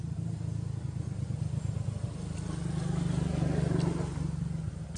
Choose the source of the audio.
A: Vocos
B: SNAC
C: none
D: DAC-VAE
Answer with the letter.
C